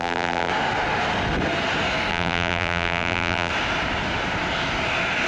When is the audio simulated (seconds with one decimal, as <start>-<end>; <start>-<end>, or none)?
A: 0.0-0.5; 2.1-3.5